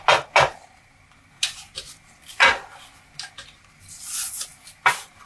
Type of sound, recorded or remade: recorded